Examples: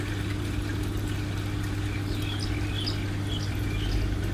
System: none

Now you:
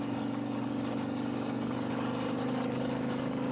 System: codec, DAC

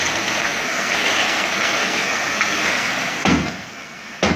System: codec, SNAC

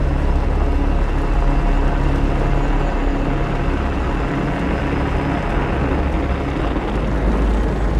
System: none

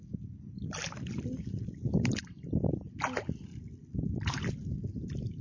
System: none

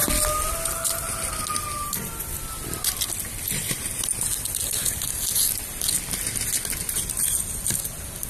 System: none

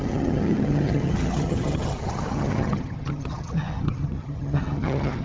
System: vocoder, HiFi-GAN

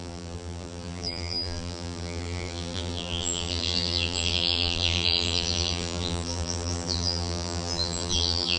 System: vocoder, BigVGAN v2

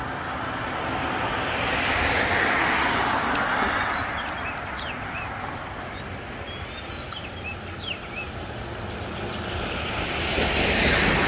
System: none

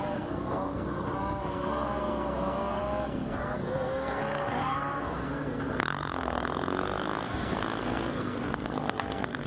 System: codec, SNAC